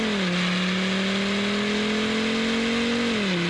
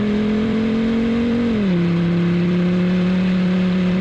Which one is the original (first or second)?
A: first